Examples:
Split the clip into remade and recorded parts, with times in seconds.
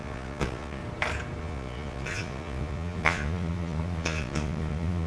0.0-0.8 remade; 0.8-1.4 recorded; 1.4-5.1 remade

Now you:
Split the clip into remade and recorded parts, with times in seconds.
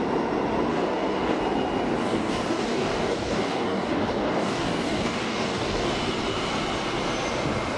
0.0-0.7 recorded; 0.7-1.4 remade; 1.4-2.0 recorded; 2.0-5.9 remade; 5.9-7.8 recorded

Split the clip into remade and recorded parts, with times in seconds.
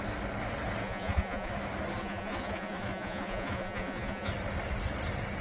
0.0-0.8 recorded; 0.8-1.5 remade; 1.5-2.0 recorded; 2.0-4.3 remade; 4.3-5.4 recorded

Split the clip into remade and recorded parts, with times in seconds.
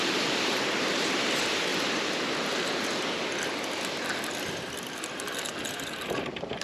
0.0-1.7 remade; 1.7-5.7 recorded; 5.7-6.6 remade